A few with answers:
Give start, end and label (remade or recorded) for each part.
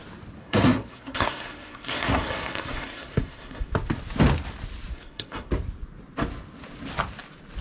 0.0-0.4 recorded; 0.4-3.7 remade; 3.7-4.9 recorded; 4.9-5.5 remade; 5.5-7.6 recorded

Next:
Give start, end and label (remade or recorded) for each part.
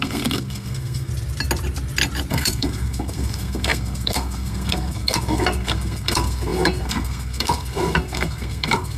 0.0-1.1 remade; 1.1-2.3 recorded; 2.3-9.0 remade